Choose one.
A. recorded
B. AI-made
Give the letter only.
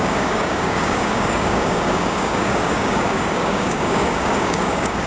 B